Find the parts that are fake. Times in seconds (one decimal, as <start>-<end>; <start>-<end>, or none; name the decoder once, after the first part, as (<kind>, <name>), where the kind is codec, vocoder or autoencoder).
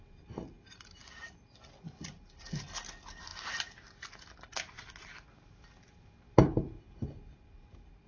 none